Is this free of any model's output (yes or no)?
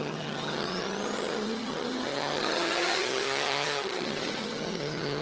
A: no